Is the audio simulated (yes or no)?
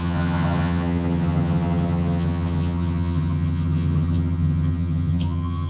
yes